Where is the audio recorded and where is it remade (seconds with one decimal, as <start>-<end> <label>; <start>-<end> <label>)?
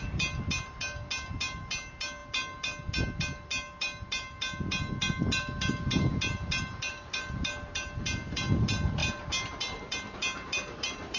0.0-11.2 recorded